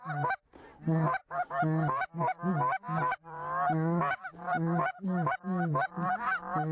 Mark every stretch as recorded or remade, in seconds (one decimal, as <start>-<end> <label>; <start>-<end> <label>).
0.0-6.7 recorded